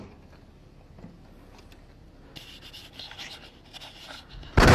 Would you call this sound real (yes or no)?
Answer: yes